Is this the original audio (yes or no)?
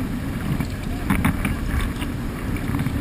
yes